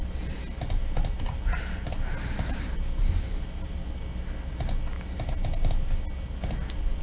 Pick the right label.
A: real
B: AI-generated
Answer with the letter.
A